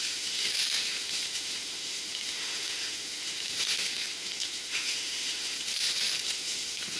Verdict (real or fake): fake